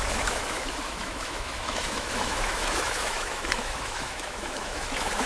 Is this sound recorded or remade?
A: remade